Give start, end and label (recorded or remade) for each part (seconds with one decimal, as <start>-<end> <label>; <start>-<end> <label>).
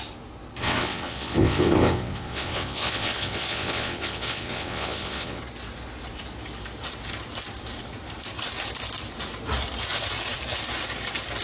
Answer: 0.0-0.6 recorded; 0.6-5.4 remade; 5.4-11.4 recorded